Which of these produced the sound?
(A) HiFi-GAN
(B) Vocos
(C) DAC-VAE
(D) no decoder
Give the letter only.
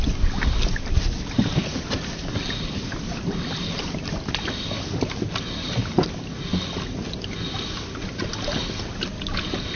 D